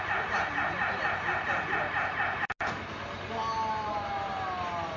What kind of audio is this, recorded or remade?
recorded